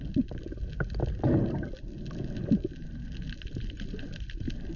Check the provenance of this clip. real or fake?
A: real